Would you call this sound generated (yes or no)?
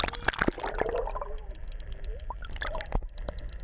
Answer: no